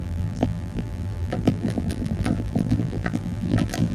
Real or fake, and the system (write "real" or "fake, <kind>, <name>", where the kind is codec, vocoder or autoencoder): fake, vocoder, BigVGAN v2